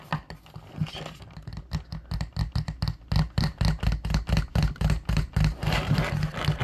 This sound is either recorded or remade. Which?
recorded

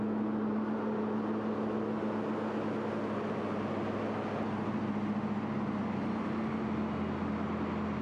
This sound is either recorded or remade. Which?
recorded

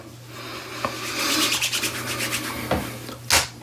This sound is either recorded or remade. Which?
recorded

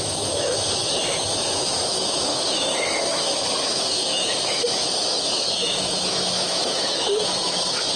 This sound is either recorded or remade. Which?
remade